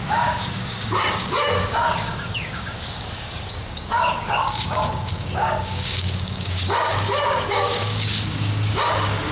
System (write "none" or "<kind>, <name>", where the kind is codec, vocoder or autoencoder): codec, DAC